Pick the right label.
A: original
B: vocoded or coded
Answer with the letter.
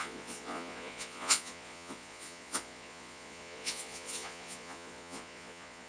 B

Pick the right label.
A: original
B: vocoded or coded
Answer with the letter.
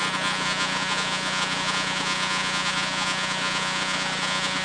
B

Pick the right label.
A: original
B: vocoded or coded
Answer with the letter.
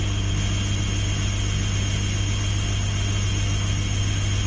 A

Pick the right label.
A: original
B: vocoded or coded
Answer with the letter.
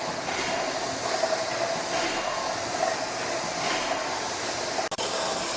A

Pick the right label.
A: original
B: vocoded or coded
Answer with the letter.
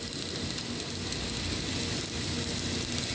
A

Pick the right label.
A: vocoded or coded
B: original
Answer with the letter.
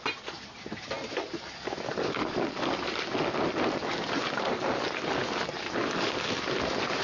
B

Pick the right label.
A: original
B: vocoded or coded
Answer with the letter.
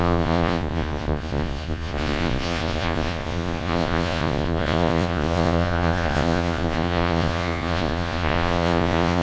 B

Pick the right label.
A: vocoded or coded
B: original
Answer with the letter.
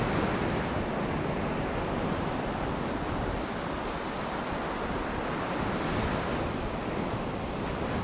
B